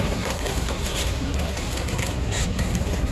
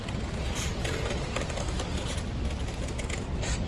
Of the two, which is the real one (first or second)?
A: second